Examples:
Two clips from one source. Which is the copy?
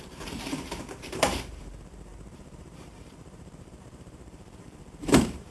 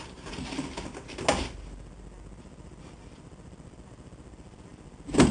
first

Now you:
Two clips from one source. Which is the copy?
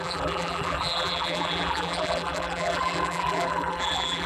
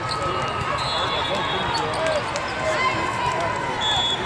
first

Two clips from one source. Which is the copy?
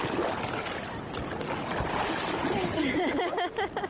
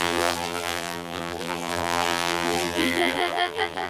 second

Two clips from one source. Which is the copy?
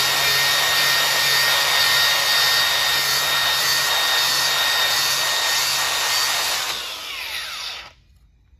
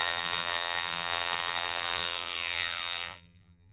second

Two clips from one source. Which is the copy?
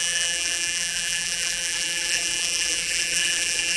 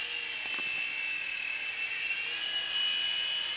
first